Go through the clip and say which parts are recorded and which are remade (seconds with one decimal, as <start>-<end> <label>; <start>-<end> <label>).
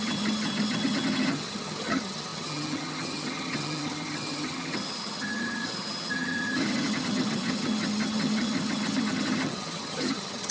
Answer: 0.0-10.5 remade